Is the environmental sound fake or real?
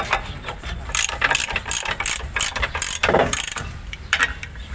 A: fake